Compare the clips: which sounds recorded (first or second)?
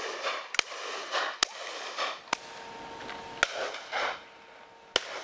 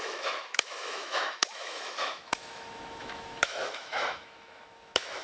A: first